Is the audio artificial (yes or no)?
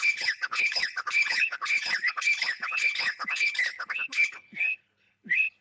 yes